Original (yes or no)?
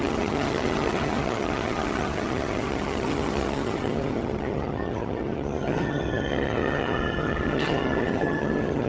no